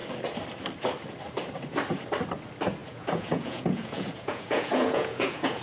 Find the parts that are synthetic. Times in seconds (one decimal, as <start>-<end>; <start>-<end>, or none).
2.8-5.6